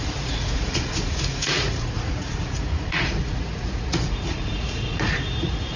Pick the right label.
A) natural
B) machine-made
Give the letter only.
B